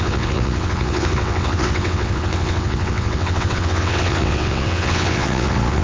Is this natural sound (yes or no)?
no